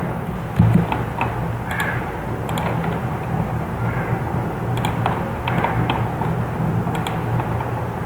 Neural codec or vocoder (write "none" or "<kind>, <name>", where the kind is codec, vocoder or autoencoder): none